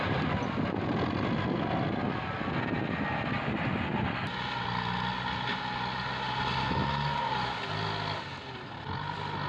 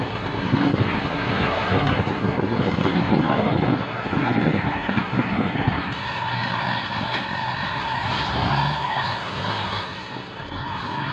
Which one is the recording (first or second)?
first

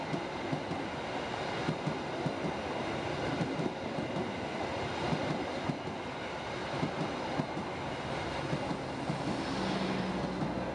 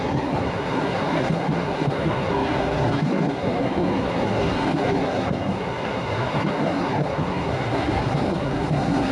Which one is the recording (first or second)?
first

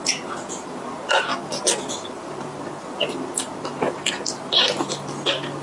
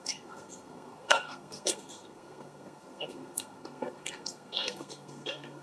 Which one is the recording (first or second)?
first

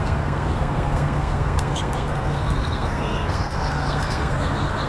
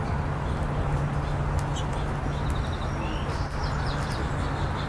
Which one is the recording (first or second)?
second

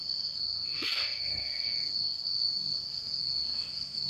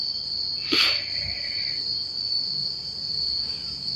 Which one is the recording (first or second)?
second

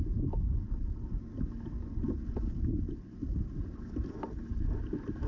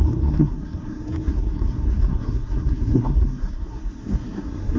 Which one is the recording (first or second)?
first